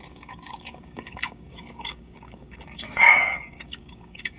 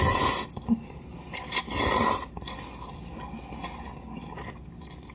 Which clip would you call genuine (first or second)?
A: second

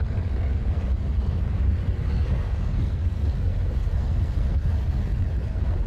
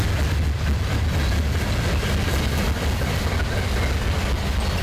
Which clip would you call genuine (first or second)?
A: second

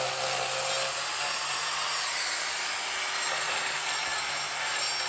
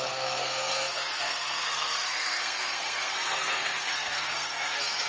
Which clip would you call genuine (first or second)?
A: first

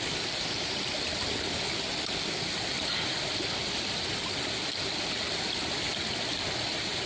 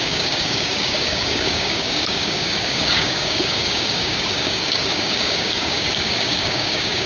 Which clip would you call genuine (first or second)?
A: first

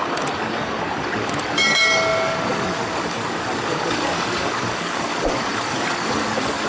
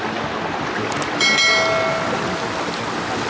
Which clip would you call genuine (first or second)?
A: second